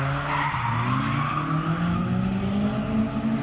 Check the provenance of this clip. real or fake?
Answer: real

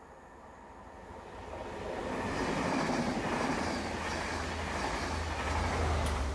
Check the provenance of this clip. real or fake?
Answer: real